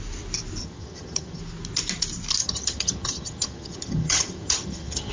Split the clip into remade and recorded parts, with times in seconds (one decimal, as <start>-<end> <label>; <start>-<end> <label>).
0.0-0.6 recorded; 0.6-1.4 remade; 1.4-2.4 recorded; 2.4-5.1 remade